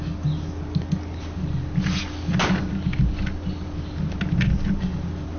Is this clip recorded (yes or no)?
yes